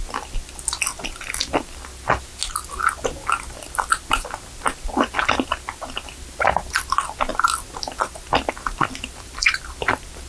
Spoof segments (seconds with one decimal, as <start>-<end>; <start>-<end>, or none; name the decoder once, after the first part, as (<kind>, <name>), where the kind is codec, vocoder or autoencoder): none